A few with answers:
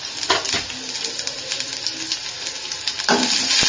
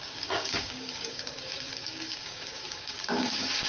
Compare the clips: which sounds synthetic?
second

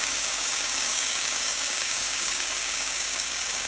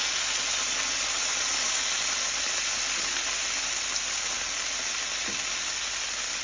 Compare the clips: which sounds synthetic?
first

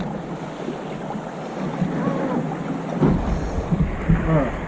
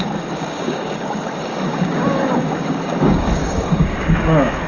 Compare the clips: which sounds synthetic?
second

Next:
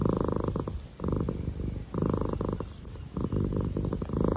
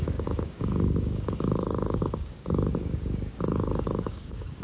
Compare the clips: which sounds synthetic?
second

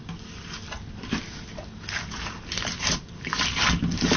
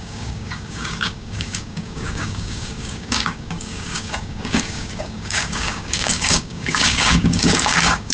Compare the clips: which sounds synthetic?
second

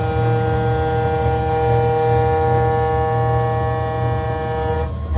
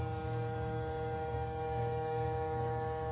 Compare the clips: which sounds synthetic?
second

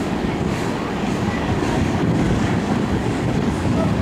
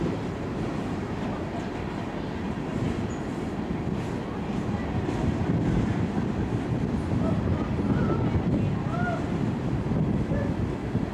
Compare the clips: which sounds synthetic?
first